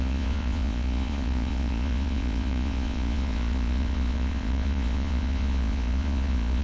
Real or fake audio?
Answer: fake